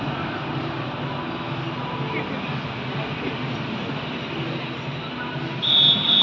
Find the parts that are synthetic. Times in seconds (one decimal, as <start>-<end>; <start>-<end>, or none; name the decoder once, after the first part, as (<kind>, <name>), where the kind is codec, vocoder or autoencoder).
none